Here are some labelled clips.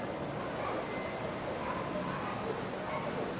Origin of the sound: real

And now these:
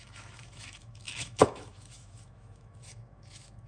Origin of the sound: fake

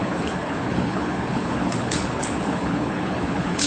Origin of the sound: fake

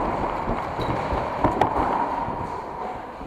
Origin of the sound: fake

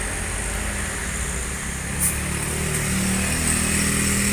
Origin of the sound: real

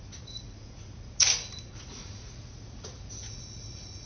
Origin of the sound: fake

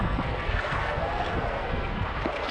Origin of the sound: fake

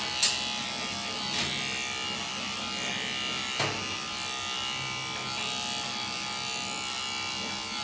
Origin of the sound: real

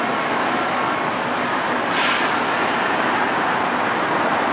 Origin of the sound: real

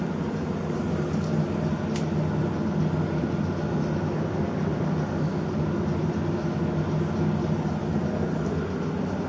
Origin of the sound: real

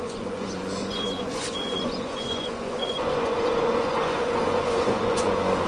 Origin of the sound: fake